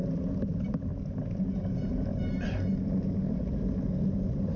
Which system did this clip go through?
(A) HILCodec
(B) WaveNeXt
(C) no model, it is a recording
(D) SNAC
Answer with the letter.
C